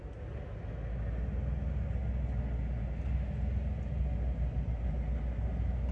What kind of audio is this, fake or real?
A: real